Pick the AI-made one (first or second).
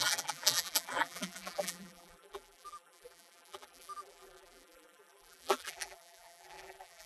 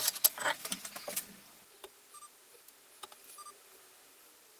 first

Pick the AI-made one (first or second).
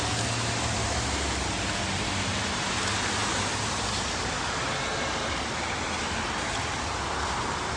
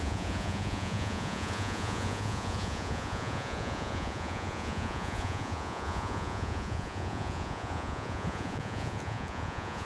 second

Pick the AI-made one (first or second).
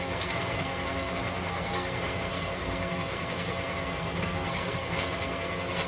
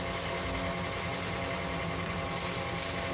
first